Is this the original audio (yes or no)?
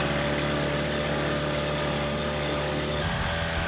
yes